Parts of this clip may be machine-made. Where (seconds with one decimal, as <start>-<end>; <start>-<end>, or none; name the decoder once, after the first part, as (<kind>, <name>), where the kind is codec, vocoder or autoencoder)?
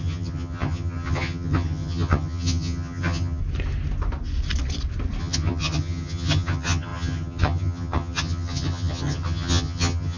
0.0-3.4 (vocoder, HiFi-GAN); 5.2-10.2